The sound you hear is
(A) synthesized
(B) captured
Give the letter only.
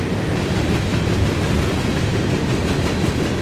B